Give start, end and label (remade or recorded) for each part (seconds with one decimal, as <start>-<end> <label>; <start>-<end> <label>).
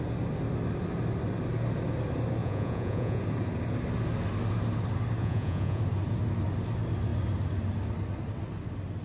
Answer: 0.0-2.4 recorded; 2.4-3.2 remade; 3.2-5.2 recorded; 5.2-5.8 remade; 5.8-9.0 recorded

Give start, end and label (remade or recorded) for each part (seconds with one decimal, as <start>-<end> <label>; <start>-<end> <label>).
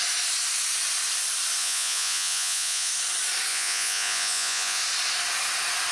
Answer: 0.0-1.6 recorded; 1.6-2.9 remade; 2.9-3.5 recorded; 3.5-4.8 remade; 4.8-5.9 recorded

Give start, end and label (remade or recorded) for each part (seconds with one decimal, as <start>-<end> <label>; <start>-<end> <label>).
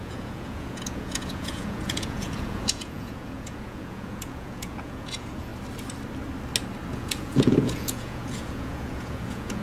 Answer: 0.0-5.5 remade; 5.5-6.9 recorded; 6.9-9.6 remade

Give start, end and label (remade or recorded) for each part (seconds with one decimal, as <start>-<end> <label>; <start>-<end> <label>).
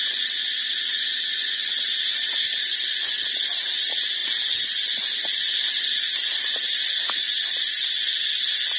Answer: 0.0-1.6 remade; 1.6-8.8 recorded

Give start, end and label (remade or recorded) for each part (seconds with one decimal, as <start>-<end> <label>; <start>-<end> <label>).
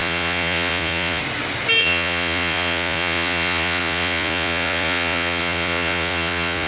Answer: 0.0-1.2 remade; 1.2-1.8 recorded; 1.8-6.7 remade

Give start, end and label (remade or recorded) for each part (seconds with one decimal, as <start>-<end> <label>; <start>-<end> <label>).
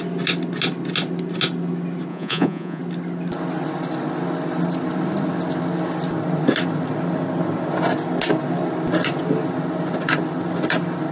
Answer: 0.0-2.1 recorded; 2.1-2.8 remade; 2.8-11.1 recorded